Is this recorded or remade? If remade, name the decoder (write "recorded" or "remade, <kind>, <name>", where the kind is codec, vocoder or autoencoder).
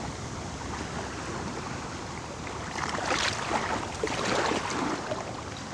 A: recorded